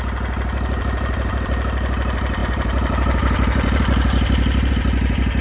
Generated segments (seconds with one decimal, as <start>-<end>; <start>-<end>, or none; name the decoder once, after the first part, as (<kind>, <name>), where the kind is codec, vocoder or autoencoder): 2.4-4.7 (vocoder, BigVGAN v2)